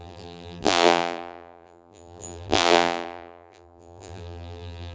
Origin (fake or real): fake